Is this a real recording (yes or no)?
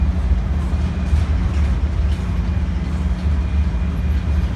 yes